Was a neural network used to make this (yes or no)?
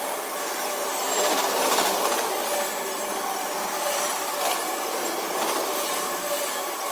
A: no